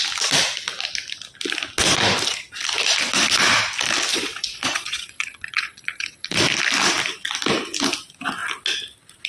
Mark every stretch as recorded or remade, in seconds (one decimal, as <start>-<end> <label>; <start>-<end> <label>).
0.0-4.1 recorded; 4.1-6.4 remade; 6.4-9.3 recorded